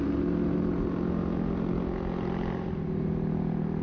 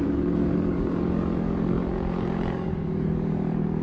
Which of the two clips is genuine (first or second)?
first